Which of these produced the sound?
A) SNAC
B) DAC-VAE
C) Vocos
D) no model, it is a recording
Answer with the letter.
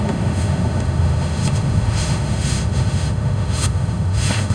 B